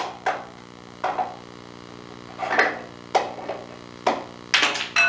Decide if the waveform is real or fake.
real